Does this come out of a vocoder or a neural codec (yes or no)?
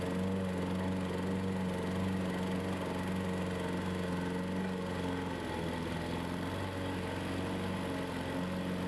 no